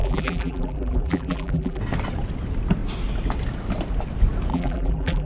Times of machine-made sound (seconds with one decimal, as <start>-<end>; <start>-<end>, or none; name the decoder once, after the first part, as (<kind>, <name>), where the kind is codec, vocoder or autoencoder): 0.0-1.8 (vocoder, BigVGAN v2); 4.5-5.3